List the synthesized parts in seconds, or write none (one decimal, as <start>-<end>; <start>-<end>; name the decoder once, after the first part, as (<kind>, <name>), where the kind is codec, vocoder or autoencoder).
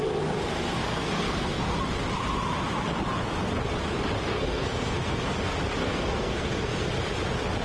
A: 0.8-1.7 (codec, SNAC); 4.3-5.2; 5.8-6.9